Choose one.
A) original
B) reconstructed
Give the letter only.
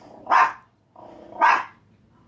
A